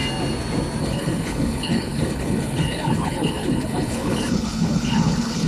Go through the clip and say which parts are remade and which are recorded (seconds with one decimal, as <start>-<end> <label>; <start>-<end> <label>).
0.0-0.8 recorded; 0.8-5.5 remade